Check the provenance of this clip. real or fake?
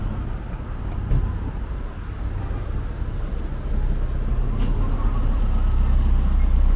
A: real